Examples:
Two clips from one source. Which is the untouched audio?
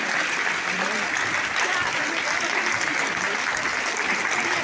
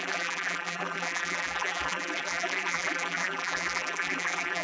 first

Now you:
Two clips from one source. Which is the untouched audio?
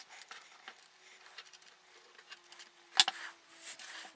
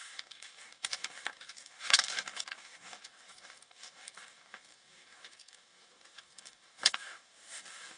first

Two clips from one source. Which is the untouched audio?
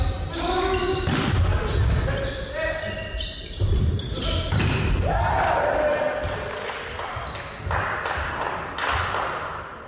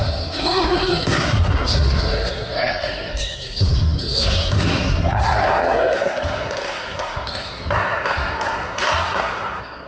first